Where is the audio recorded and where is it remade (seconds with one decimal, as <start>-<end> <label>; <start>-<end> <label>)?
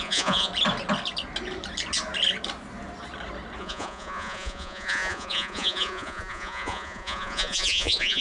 0.0-0.5 remade; 0.5-3.6 recorded; 3.6-8.2 remade